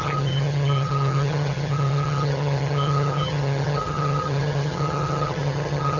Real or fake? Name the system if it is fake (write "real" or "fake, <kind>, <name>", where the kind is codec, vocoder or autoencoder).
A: fake, vocoder, HiFi-GAN